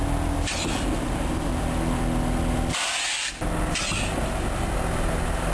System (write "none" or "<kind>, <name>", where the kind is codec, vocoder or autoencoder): none